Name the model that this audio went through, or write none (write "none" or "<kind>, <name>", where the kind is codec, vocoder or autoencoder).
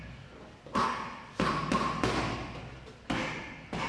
none